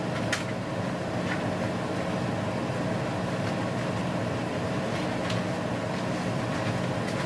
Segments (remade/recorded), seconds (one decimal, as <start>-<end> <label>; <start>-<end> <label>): 0.0-4.0 recorded; 4.0-4.8 remade; 4.8-7.3 recorded